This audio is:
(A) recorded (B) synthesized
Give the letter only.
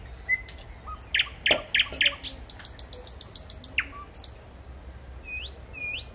A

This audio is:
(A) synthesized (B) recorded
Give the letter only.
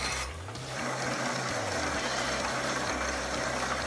B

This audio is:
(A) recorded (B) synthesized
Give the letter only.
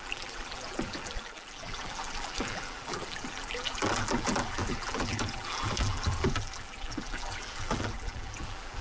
B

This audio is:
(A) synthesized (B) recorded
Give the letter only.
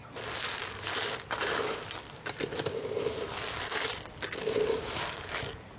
B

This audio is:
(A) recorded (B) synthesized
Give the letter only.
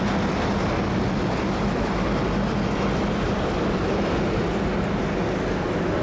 A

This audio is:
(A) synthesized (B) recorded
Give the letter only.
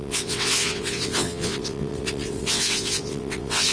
A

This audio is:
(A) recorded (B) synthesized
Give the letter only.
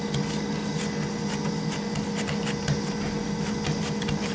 A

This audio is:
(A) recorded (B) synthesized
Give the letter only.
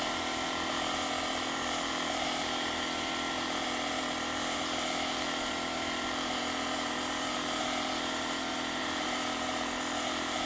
B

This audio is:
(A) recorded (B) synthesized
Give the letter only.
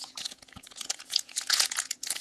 B